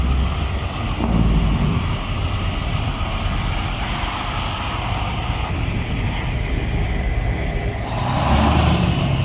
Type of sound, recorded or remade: recorded